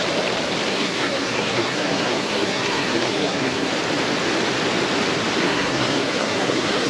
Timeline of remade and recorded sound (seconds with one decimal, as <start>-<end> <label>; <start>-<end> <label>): 0.0-0.7 recorded; 0.7-3.7 remade; 3.7-5.4 recorded; 5.4-6.9 remade